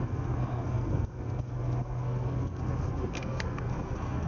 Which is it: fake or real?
fake